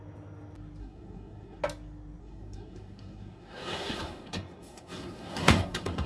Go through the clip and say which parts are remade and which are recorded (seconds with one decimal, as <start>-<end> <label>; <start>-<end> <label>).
0.0-0.8 recorded; 0.8-1.6 remade; 1.6-2.2 recorded; 2.2-6.1 remade